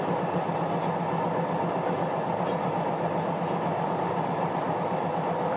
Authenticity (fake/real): real